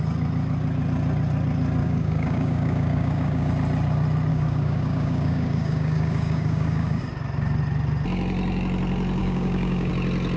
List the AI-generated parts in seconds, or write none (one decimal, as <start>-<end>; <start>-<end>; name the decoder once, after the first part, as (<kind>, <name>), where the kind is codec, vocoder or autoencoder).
1.8-3.5 (codec, DAC); 4.3-7.0; 9.2-9.9